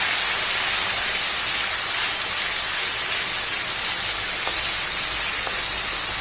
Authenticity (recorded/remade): recorded